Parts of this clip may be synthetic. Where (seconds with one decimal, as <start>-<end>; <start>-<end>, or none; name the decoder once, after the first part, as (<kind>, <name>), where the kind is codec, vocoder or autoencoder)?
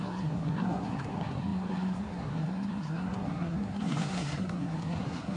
0.0-5.4 (codec, SNAC)